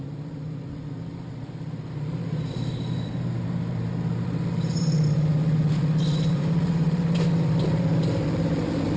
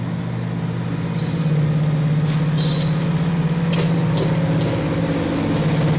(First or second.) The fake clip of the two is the first